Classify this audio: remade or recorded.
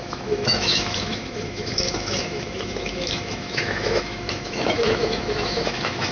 remade